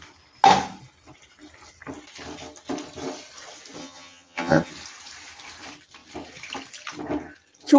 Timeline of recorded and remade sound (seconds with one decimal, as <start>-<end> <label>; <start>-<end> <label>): 0.0-3.8 recorded; 3.8-4.7 remade; 4.7-7.8 recorded